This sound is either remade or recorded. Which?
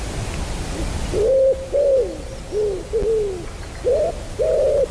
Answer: recorded